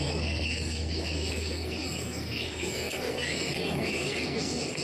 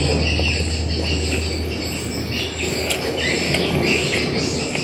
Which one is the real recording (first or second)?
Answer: second